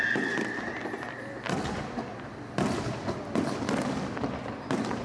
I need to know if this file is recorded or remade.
recorded